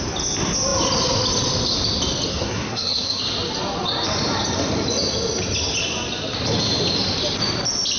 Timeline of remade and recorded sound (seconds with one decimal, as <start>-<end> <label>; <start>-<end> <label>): 0.0-2.3 recorded; 2.3-3.2 remade; 3.2-8.0 recorded